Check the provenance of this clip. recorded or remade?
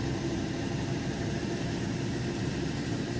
remade